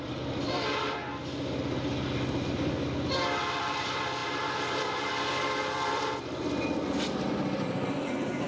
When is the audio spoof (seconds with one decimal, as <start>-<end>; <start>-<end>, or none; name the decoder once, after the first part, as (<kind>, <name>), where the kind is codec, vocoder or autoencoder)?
0.0-1.0 (vocoder, BigVGAN v2); 3.5-8.5